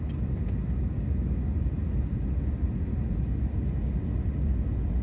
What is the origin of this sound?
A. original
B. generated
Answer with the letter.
A